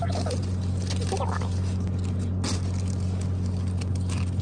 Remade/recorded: recorded